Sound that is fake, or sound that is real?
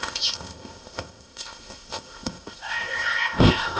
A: fake